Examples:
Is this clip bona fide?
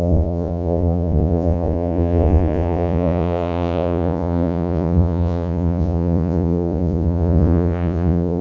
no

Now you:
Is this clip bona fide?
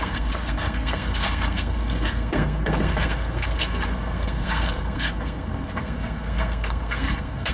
no